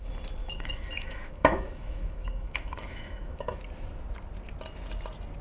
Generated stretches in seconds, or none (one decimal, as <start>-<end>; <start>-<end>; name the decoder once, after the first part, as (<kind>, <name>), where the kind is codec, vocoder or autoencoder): 0.4-3.6 (autoencoder, DAC-VAE)